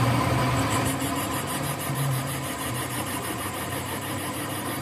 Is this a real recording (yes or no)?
no